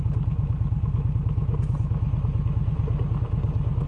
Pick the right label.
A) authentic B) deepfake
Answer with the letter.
A